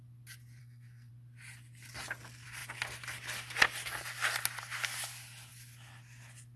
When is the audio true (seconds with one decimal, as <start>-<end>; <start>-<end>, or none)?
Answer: 0.0-0.6; 1.1-6.6